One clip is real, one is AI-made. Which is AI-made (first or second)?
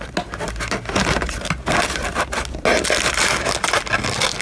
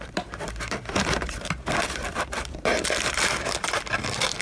second